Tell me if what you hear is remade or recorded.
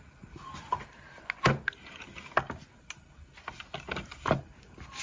recorded